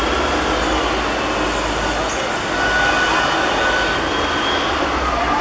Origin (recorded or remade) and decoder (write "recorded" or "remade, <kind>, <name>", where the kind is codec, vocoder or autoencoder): recorded